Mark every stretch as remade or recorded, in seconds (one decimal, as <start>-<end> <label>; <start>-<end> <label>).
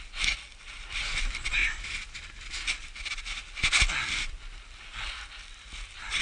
0.0-6.2 recorded